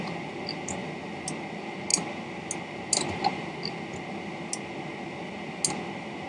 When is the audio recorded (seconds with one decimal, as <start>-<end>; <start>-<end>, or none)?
0.0-6.3